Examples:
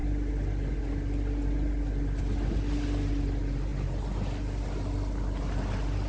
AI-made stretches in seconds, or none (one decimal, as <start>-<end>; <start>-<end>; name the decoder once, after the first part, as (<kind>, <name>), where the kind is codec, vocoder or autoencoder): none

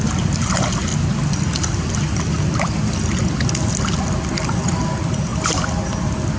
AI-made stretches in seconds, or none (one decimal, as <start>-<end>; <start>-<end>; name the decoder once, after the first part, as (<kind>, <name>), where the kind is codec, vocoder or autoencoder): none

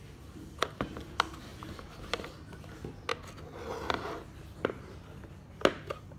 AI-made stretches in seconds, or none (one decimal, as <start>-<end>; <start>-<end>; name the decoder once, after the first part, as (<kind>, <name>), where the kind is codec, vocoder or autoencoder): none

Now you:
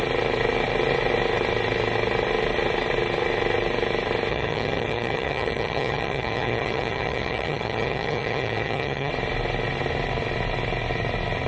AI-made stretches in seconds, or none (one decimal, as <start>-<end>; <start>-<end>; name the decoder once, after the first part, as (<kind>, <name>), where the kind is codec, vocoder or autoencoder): 4.3-9.1 (vocoder, HiFi-GAN)

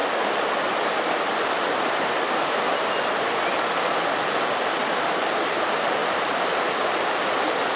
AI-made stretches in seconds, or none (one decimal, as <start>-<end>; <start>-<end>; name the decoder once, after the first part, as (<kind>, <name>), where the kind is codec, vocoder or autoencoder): 4.7-6.0 (vocoder, BigVGAN v2); 6.5-7.8

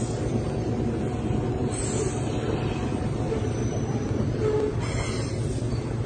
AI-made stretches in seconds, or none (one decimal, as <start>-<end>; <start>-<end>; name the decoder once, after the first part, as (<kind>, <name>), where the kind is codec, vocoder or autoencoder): none

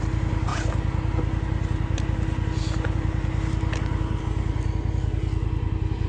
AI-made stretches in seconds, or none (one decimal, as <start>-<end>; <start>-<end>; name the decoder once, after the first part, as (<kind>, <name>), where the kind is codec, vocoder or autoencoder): none